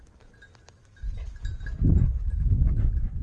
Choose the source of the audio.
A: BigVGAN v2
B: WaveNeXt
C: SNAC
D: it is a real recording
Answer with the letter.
D